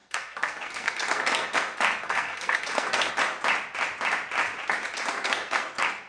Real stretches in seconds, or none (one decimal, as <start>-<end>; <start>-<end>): 3.1-5.1